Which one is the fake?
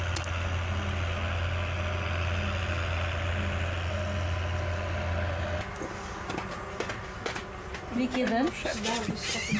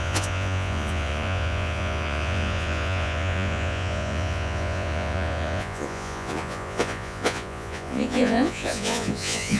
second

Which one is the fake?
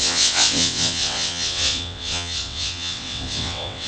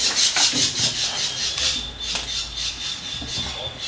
first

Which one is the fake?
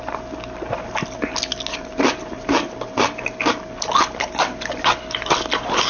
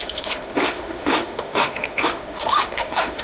second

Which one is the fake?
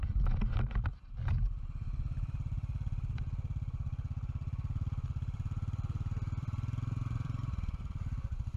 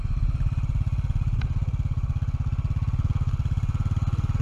first